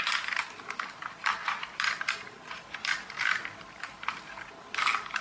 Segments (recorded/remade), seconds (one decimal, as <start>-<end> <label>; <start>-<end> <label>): 0.0-5.2 recorded